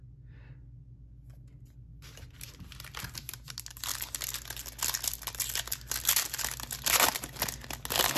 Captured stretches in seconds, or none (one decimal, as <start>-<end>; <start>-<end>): 0.0-8.2